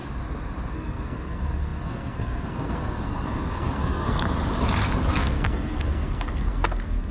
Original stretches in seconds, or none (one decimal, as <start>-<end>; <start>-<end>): 0.0-0.7; 4.2-5.1